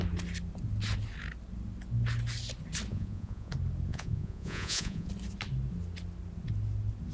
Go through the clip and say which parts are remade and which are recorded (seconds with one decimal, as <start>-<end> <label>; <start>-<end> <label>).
0.0-2.9 recorded; 2.9-3.5 remade; 3.5-3.9 recorded; 3.9-5.1 remade; 5.1-7.1 recorded